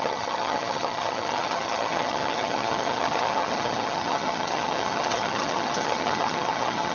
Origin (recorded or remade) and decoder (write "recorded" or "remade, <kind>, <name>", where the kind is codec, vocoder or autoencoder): remade, vocoder, HiFi-GAN